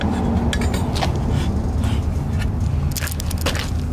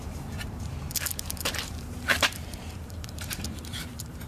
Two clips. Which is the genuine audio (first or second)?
first